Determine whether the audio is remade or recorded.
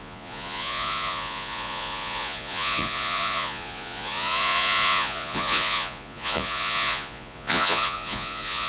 remade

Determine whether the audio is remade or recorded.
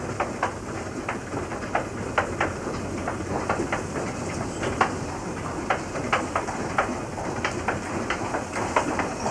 recorded